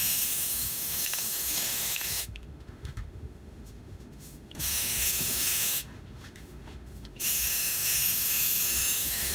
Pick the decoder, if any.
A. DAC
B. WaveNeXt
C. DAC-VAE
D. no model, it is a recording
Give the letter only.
C